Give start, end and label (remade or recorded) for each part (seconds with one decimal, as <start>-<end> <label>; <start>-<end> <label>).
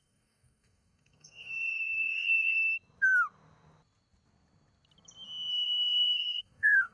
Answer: 0.0-2.7 remade; 2.7-5.5 recorded; 5.5-6.9 remade